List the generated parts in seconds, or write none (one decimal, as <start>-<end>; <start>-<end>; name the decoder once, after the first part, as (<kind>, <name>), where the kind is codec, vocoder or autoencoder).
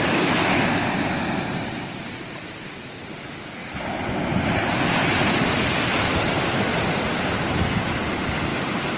none